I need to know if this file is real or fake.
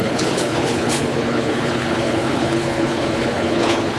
fake